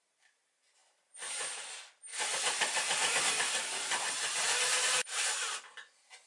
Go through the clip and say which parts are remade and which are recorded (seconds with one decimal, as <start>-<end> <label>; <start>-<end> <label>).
0.0-2.1 recorded; 2.1-4.0 remade; 4.0-4.7 recorded; 4.7-5.6 remade; 5.6-6.3 recorded